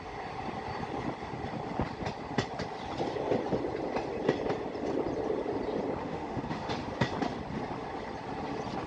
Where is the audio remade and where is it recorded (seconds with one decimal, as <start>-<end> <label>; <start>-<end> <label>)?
0.0-6.0 recorded; 6.0-6.7 remade; 6.7-8.9 recorded